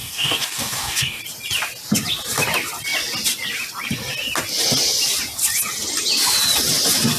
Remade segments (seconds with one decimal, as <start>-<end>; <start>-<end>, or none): 0.0-1.2